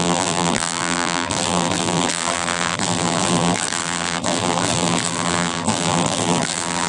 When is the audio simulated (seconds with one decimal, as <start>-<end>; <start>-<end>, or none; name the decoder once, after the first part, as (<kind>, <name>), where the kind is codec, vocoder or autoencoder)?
0.0-6.9 (vocoder, BigVGAN v2)